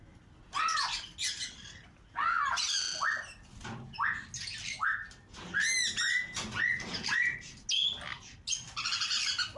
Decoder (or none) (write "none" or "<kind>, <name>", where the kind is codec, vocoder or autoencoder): none